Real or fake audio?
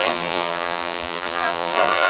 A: fake